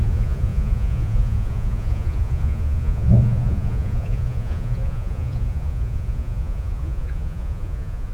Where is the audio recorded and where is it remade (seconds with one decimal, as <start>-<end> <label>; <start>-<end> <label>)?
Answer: 0.0-8.1 remade